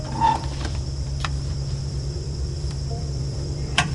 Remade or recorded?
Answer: remade